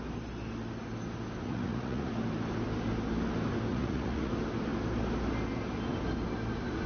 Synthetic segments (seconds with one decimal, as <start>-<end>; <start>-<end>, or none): 1.4-2.1; 3.7-4.3